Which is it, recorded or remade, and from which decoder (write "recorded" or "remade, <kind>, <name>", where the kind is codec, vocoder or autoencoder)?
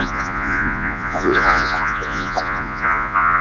remade, vocoder, Vocos